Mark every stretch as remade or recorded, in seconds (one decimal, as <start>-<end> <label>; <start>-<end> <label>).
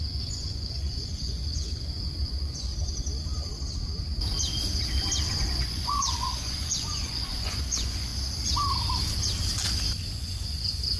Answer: 0.0-2.7 remade; 2.7-5.5 recorded; 5.5-8.1 remade; 8.1-10.1 recorded; 10.1-11.0 remade